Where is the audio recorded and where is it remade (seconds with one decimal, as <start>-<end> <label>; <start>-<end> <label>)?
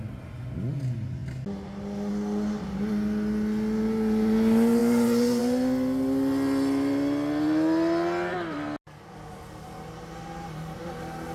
0.0-11.3 recorded